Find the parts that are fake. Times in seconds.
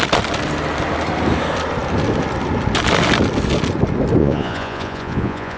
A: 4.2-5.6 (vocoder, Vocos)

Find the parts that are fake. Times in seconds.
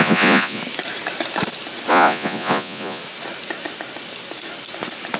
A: 0.0-0.6 (vocoder, Vocos); 1.9-3.0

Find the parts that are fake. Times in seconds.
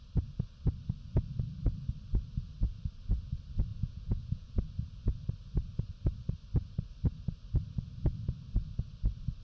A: 3.7-4.5 (vocoder, Vocos)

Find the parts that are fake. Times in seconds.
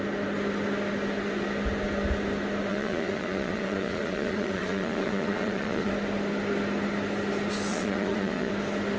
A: 2.7-5.9 (vocoder, Vocos); 7.7-8.5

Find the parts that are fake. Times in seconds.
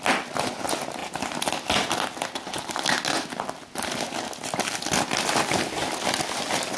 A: none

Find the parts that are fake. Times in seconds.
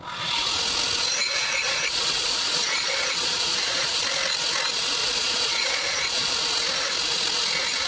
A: 1.3-4.0 (vocoder, Vocos); 5.0-6.3